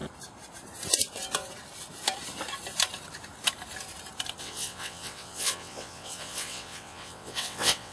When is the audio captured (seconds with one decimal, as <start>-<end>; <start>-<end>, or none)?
0.0-4.4